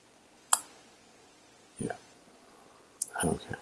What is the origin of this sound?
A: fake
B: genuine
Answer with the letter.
A